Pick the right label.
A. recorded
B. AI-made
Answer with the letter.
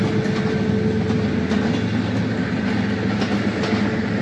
A